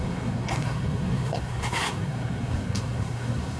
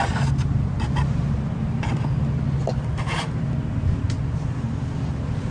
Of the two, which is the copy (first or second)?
first